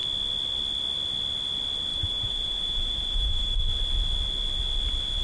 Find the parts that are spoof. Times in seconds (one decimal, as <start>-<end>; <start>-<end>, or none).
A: 1.9-3.6